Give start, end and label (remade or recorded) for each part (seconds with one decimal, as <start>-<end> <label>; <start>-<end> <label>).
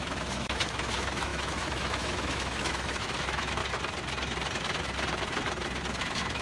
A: 0.0-3.6 remade; 3.6-6.0 recorded; 6.0-6.4 remade